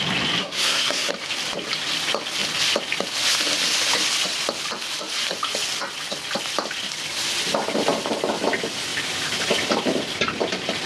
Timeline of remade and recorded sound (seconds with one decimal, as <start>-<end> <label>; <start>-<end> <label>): 0.0-0.4 recorded; 0.4-1.1 remade; 1.1-10.9 recorded